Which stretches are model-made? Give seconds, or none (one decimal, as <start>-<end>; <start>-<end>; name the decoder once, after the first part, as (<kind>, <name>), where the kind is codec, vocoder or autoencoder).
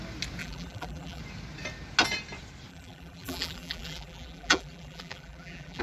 0.4-1.2 (vocoder, BigVGAN v2); 2.7-5.8